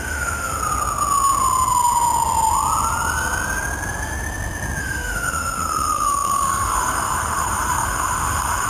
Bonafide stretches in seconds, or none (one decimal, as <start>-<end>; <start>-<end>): 0.6-4.8